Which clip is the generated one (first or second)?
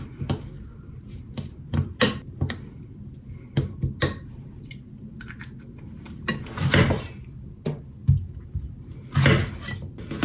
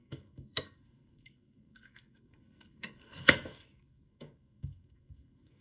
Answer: second